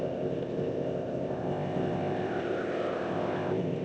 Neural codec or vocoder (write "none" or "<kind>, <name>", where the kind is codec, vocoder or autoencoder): codec, ZipCodec